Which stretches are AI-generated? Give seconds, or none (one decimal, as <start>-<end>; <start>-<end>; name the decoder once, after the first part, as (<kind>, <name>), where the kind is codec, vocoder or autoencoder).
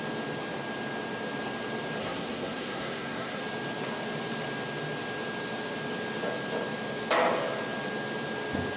2.0-3.4 (codec, SNAC)